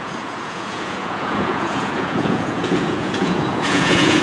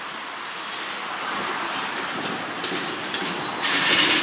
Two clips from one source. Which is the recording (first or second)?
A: second